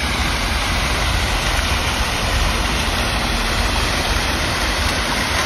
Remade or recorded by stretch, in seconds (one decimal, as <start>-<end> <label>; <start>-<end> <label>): 0.0-1.3 remade; 1.3-1.8 recorded; 1.8-5.1 remade; 5.1-5.5 recorded